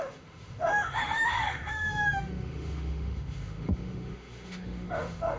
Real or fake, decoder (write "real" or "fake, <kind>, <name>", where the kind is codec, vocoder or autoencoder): fake, autoencoder, DAC-VAE